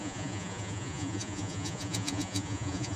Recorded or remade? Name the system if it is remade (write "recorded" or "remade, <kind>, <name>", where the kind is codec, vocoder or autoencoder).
remade, vocoder, Vocos